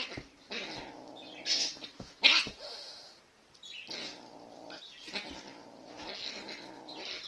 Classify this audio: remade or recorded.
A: recorded